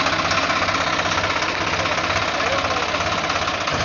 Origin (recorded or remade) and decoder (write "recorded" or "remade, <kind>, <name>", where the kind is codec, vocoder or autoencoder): recorded